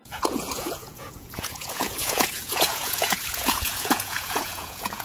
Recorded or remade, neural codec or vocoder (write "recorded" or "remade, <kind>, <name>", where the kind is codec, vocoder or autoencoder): remade, vocoder, Vocos